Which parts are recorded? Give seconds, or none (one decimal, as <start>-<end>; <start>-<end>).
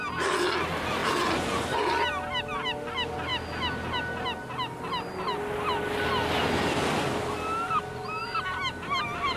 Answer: 0.0-9.4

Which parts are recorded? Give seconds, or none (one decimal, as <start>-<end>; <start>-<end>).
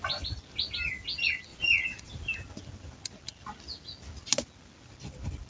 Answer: 0.0-1.5; 2.1-5.5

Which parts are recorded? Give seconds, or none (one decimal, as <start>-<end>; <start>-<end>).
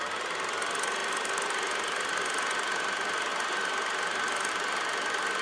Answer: 0.0-5.4